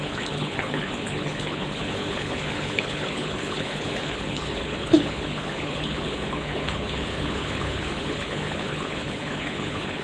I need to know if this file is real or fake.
fake